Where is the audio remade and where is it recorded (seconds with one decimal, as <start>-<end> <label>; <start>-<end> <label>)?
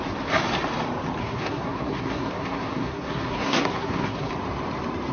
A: 0.0-1.2 recorded; 1.2-4.3 remade; 4.3-5.1 recorded